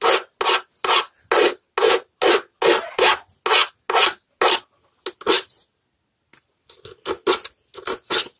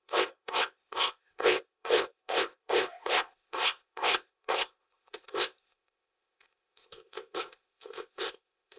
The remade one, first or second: second